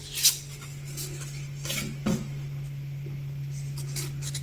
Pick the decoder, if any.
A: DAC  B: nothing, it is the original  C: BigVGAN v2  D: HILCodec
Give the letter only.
B